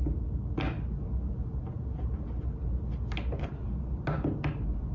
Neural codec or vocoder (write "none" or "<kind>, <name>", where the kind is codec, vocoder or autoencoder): none